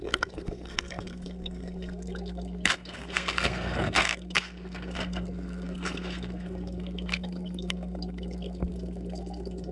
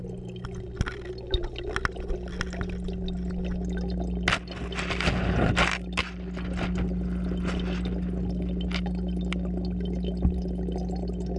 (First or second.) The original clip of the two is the second